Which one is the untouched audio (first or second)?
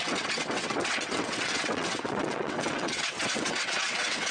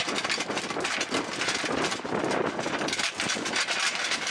second